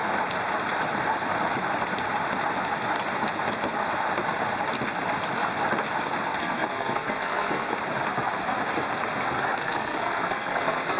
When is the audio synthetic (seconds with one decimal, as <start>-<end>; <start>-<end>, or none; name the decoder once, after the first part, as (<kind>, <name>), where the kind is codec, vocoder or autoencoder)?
6.4-7.7 (codec, SNAC); 9.6-11.0